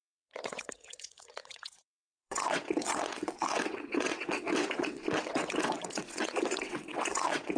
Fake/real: fake